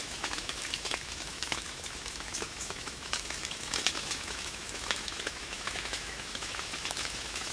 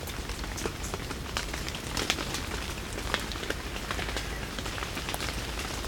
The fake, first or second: first